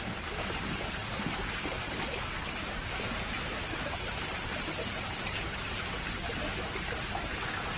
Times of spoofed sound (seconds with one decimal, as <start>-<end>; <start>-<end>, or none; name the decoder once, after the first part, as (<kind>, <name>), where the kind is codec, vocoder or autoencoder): none